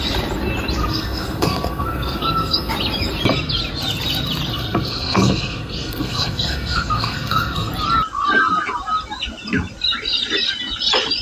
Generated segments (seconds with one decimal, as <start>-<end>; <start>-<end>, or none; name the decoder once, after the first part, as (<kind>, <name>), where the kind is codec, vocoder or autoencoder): 0.8-2.7 (codec, SNAC); 4.5-7.7